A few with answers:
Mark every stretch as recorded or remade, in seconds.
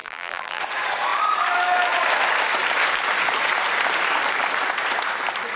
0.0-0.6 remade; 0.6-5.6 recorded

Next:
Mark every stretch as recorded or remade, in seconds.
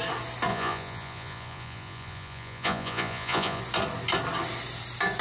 0.0-0.5 recorded; 0.5-3.6 remade; 3.6-5.2 recorded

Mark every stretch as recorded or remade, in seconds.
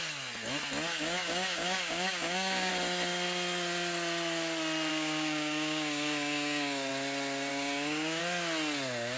0.0-0.9 recorded; 0.9-2.7 remade; 2.7-4.9 recorded; 4.9-6.9 remade; 6.9-7.5 recorded; 7.5-8.2 remade; 8.2-9.2 recorded